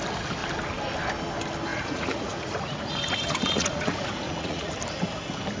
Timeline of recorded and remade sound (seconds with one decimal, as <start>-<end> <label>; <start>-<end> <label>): 0.0-1.7 recorded; 1.7-4.7 remade; 4.7-5.6 recorded